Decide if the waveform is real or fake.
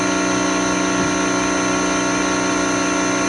real